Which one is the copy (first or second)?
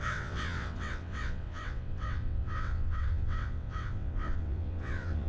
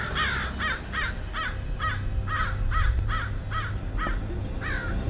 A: first